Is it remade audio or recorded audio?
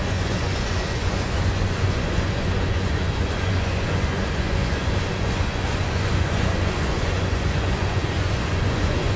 remade